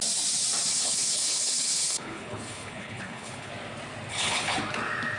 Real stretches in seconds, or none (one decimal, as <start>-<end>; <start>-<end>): 0.0-0.7; 3.5-4.1; 4.6-5.2